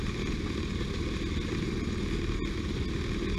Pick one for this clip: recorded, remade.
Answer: recorded